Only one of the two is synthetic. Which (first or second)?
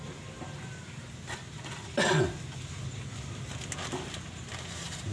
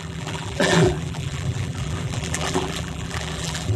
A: second